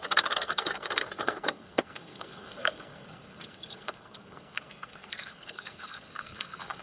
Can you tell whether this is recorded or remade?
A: remade